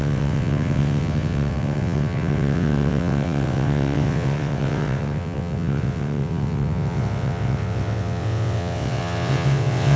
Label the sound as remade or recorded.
remade